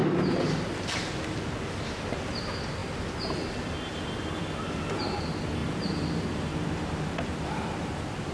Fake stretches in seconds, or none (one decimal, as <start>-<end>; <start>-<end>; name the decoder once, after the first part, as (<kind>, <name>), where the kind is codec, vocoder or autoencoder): 5.6-6.5 (vocoder, BigVGAN v2)